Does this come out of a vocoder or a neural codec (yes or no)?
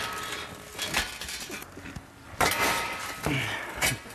no